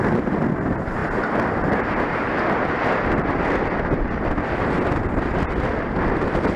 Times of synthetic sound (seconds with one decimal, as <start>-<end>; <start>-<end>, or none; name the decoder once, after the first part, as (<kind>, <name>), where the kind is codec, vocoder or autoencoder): none